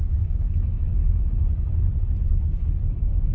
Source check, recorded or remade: remade